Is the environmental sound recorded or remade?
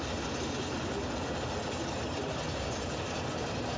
recorded